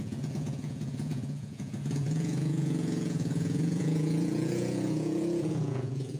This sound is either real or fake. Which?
fake